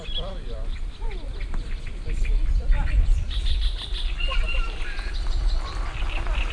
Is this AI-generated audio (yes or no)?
yes